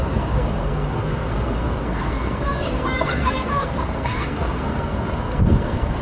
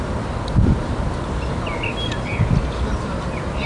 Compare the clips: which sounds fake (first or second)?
first